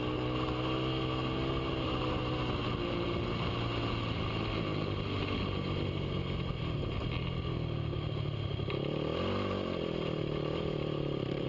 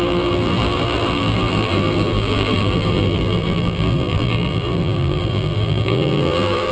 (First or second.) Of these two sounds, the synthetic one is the second